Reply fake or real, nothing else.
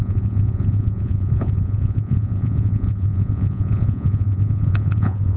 fake